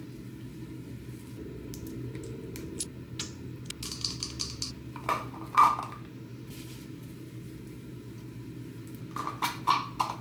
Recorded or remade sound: recorded